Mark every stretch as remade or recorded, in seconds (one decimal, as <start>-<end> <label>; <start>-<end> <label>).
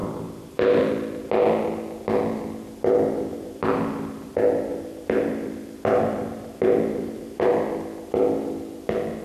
0.0-0.9 remade; 0.9-3.3 recorded; 3.3-4.3 remade; 4.3-4.7 recorded; 4.7-7.5 remade; 7.5-9.2 recorded